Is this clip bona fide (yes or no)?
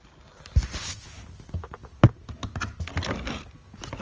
yes